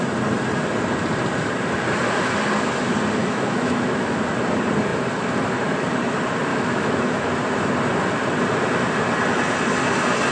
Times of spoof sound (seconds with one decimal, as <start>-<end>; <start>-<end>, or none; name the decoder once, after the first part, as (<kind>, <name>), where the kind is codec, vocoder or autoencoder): 3.2-4.2 (autoencoder, DAC-VAE); 6.5-7.3